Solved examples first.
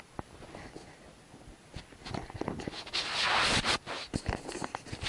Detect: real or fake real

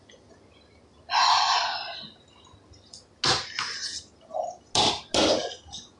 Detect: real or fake real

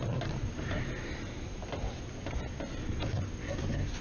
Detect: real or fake real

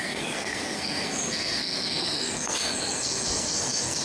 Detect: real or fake fake